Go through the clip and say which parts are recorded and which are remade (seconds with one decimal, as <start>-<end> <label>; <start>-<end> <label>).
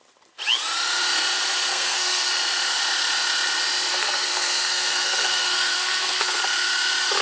0.0-1.7 recorded; 1.7-2.3 remade; 2.3-3.9 recorded; 3.9-6.4 remade; 6.4-7.2 recorded